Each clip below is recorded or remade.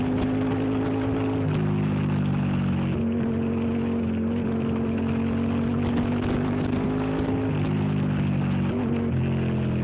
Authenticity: recorded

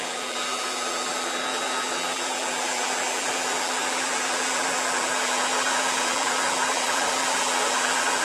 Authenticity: remade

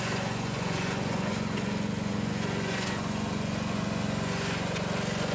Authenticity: remade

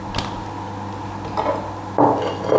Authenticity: recorded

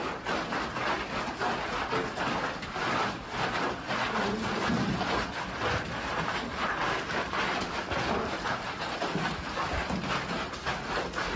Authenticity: recorded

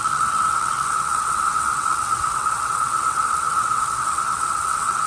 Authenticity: remade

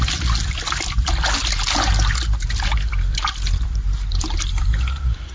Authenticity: recorded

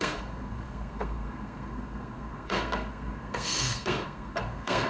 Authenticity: remade